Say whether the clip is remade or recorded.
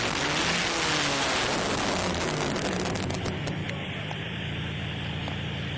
recorded